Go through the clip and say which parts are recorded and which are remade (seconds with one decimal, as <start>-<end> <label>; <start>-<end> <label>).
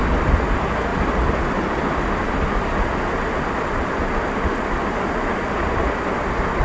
0.0-6.6 recorded